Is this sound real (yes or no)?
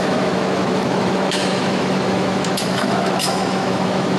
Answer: no